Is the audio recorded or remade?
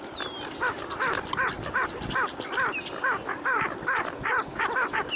recorded